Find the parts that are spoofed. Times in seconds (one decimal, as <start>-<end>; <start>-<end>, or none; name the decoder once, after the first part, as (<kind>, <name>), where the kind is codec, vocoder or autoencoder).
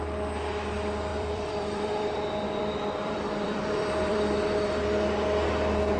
1.1-4.7 (vocoder, BigVGAN v2)